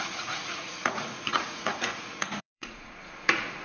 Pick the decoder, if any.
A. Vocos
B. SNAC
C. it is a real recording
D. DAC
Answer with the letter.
A